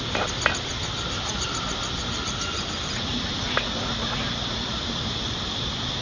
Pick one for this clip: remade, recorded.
recorded